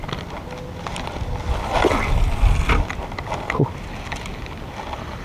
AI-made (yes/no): no